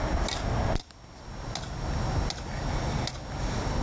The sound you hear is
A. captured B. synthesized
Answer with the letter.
A